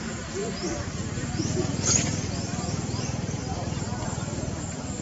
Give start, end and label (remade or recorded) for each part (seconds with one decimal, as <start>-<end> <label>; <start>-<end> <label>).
0.0-5.0 recorded

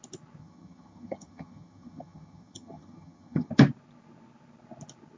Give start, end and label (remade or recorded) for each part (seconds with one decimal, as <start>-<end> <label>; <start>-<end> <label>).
0.0-0.4 recorded; 0.4-3.5 remade; 3.5-5.2 recorded

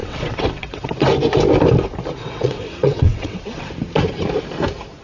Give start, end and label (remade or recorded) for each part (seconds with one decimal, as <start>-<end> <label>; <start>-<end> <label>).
0.0-0.9 remade; 0.9-2.2 recorded; 2.2-3.7 remade; 3.7-5.0 recorded

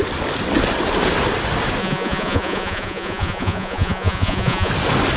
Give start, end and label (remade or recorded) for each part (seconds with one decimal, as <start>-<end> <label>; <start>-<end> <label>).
0.0-1.8 recorded; 1.8-4.7 remade; 4.7-5.2 recorded

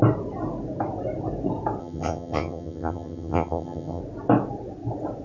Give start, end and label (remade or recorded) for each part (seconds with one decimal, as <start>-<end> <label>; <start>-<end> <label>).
0.0-1.8 recorded; 1.8-4.0 remade; 4.0-5.2 recorded

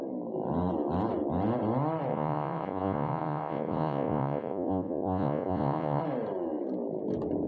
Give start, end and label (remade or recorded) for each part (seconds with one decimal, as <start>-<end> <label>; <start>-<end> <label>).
0.0-2.1 recorded; 2.1-6.0 remade; 6.0-7.5 recorded

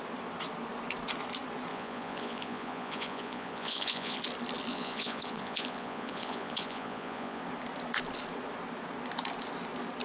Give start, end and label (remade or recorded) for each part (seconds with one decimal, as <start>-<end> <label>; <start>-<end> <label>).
0.0-1.7 recorded; 1.7-4.2 remade; 4.2-4.7 recorded; 4.7-7.4 remade; 7.4-10.0 recorded

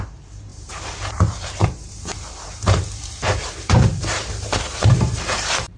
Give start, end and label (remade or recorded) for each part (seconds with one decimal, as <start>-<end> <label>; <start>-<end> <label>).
0.0-5.8 remade